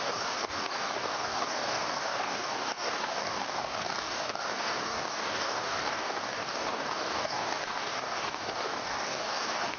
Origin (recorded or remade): remade